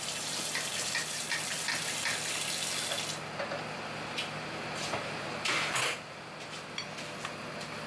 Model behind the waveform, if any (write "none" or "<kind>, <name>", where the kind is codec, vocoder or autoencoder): none